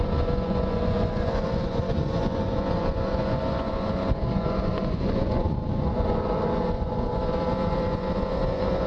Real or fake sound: fake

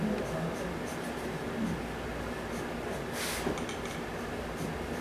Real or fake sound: real